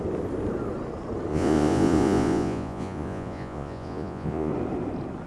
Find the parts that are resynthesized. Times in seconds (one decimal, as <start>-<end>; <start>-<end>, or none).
1.3-4.5